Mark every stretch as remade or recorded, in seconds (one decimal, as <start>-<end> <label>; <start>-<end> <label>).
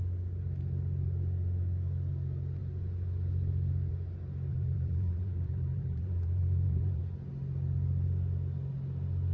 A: 0.0-4.5 recorded; 4.5-7.0 remade; 7.0-9.3 recorded